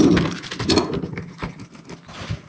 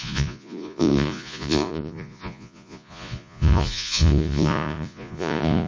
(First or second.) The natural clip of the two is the first